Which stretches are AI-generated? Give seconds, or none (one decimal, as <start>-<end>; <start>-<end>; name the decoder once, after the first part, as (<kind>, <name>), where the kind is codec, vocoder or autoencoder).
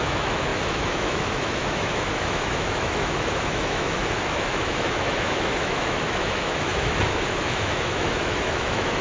0.0-9.0 (autoencoder, DAC-VAE)